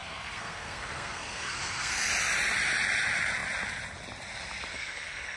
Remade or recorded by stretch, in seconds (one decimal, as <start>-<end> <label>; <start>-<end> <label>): 0.0-2.1 remade; 2.1-4.7 recorded; 4.7-5.4 remade